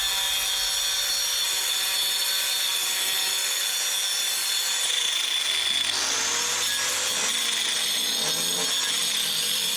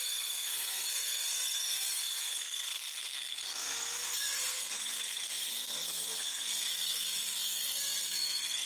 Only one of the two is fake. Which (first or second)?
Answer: second